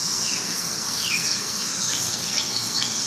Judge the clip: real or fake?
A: fake